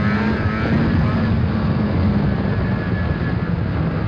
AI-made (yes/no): no